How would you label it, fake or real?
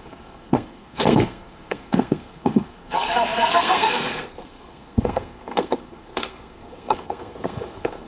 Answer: fake